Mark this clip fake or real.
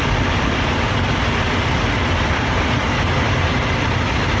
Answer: real